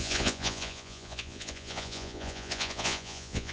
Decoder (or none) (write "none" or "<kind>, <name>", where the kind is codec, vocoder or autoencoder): vocoder, Vocos